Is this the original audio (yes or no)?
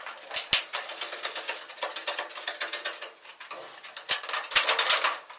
yes